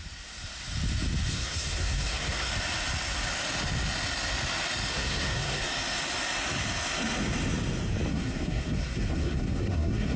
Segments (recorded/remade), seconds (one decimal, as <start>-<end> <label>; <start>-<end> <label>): 0.0-1.3 recorded; 1.3-2.5 remade; 2.5-4.9 recorded; 4.9-5.7 remade; 5.7-8.1 recorded; 8.1-10.2 remade